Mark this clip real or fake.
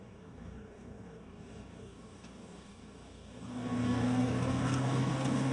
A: fake